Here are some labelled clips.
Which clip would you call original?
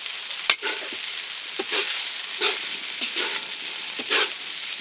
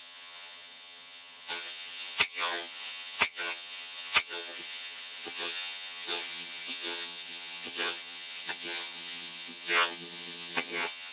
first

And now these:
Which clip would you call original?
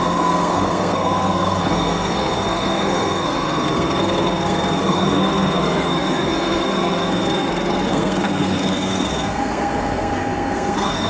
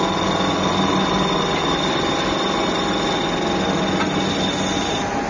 second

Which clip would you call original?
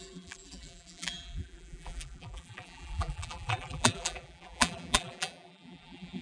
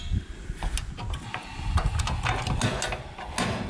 second